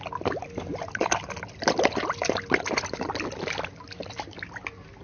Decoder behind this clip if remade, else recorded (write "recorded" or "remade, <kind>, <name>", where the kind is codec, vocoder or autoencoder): recorded